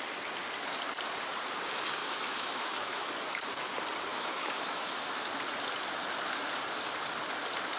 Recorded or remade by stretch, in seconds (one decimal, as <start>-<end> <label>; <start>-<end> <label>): 0.0-2.0 recorded; 2.0-3.1 remade; 3.1-4.1 recorded; 4.1-5.2 remade; 5.2-7.8 recorded